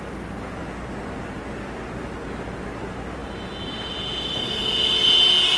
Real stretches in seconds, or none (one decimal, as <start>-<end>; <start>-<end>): 0.0-5.6